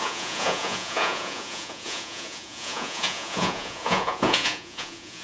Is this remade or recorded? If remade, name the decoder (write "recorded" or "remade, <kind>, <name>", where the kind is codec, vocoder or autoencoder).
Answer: remade, vocoder, Vocos